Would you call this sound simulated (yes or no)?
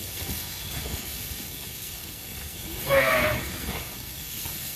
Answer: yes